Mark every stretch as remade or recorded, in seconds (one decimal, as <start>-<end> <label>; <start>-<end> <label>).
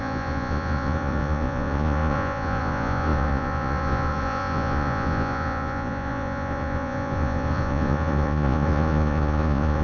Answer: 0.0-9.8 remade